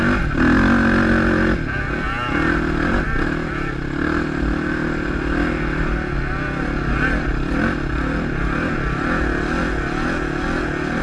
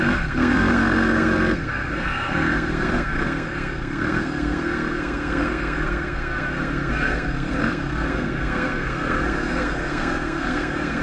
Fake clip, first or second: second